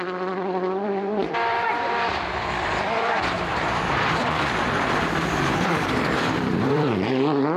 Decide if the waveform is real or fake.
fake